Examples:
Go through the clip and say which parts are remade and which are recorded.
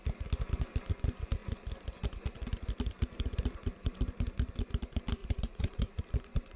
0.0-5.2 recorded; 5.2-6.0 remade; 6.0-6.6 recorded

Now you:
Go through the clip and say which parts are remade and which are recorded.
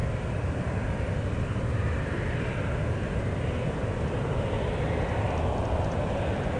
0.0-6.6 recorded